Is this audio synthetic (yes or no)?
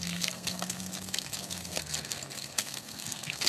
yes